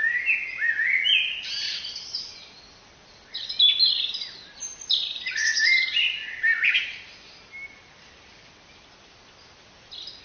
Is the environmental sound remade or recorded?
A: recorded